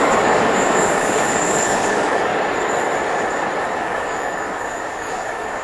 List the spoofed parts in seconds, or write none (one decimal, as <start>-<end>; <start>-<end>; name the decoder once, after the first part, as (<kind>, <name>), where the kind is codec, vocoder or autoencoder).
0.0-2.3 (codec, DAC); 3.6-5.6